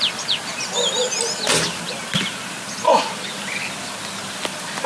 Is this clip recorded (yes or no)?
yes